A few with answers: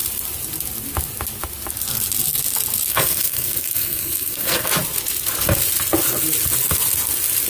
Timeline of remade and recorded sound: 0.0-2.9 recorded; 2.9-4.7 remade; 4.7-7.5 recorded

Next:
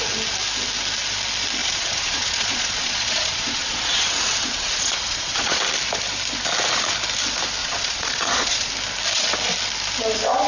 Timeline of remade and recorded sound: 0.0-1.6 recorded; 1.6-5.6 remade; 5.6-7.6 recorded; 7.6-8.7 remade; 8.7-10.5 recorded